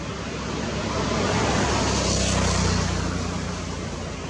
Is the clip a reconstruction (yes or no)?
no